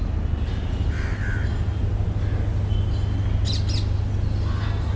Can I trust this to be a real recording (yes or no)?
yes